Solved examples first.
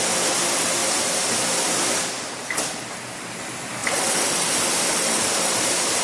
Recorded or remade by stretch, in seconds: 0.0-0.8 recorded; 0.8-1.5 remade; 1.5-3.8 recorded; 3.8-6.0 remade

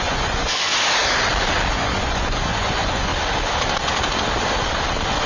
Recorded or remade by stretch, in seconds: 0.0-0.7 remade; 0.7-1.7 recorded; 1.7-3.1 remade; 3.1-5.3 recorded

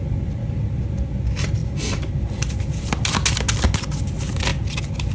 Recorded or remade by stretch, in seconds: 0.0-5.1 recorded

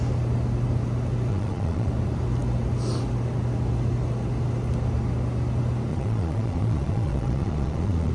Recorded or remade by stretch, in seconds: 0.0-1.3 recorded; 1.3-1.9 remade; 1.9-5.9 recorded; 5.9-8.1 remade

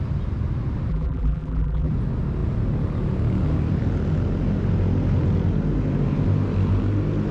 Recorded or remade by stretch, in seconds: 0.0-0.9 recorded; 0.9-1.9 remade; 1.9-7.3 recorded